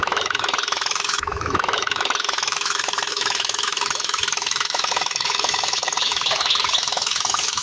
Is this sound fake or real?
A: fake